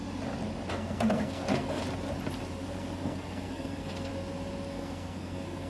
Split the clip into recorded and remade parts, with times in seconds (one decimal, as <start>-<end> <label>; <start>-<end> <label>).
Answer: 0.0-0.7 recorded; 0.7-1.8 remade; 1.8-2.6 recorded; 2.6-4.1 remade; 4.1-4.7 recorded; 4.7-5.7 remade